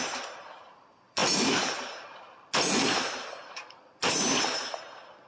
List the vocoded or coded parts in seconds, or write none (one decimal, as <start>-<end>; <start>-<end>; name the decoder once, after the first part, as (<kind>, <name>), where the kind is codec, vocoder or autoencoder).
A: none